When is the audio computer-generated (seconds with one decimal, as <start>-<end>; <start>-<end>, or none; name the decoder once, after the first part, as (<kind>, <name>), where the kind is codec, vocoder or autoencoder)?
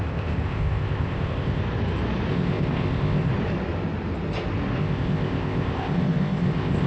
0.0-1.6 (codec, ZipCodec); 2.3-3.3; 4.8-6.9